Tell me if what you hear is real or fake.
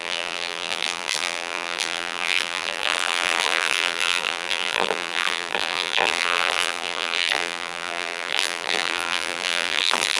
fake